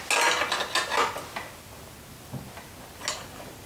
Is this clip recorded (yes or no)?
yes